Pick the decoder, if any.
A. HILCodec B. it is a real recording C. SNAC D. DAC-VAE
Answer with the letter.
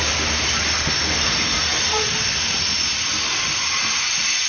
B